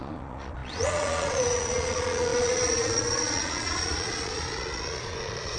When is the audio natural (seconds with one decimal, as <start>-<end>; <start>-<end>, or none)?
none